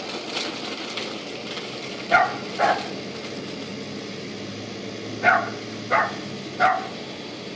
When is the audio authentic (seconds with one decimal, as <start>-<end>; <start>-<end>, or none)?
0.0-7.6